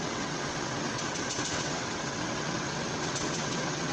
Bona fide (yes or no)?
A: no